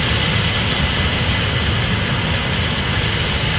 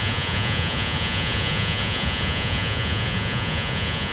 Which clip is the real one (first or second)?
first